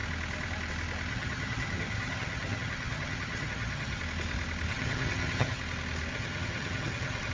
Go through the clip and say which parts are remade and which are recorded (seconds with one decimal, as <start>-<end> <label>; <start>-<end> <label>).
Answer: 0.0-1.1 recorded; 1.1-4.0 remade; 4.0-4.7 recorded; 4.7-5.6 remade; 5.6-6.1 recorded; 6.1-7.3 remade